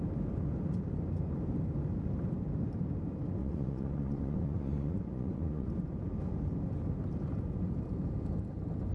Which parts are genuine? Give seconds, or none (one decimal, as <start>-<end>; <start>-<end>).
0.0-3.4; 5.7-8.9